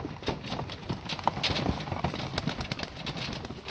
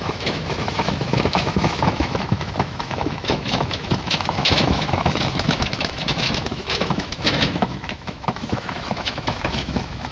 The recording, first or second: first